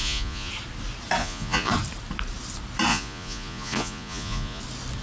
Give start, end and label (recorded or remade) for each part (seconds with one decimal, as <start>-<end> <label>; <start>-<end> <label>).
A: 0.0-0.5 remade; 0.5-1.2 recorded; 1.2-1.7 remade; 1.7-2.9 recorded; 2.9-4.6 remade; 4.6-5.0 recorded